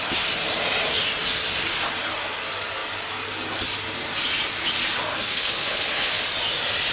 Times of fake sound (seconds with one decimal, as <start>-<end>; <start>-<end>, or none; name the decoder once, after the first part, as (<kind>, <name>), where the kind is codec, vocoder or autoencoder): 5.1-6.1 (codec, HILCodec)